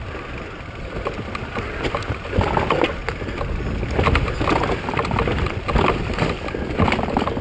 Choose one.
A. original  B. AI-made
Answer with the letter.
A